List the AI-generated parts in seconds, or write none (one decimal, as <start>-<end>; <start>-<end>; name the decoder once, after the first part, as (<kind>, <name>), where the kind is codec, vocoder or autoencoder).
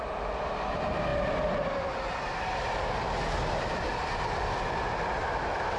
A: none